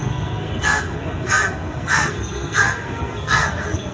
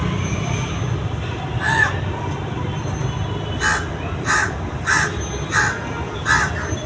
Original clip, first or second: second